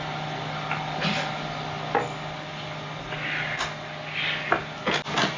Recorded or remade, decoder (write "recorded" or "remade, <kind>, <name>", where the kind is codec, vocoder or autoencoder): recorded